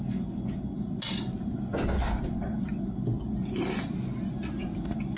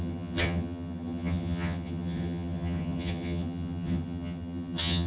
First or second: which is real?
first